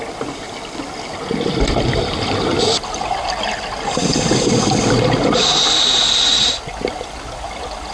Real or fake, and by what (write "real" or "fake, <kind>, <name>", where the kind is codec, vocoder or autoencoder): real